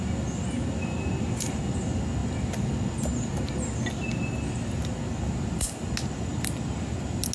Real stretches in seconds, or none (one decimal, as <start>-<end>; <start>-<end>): 0.0-7.3